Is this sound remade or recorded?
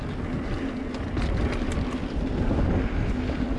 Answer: recorded